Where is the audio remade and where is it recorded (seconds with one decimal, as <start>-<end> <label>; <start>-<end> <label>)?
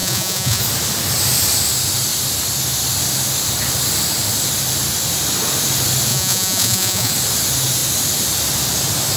0.0-0.6 remade; 0.6-6.1 recorded; 6.1-7.1 remade; 7.1-9.2 recorded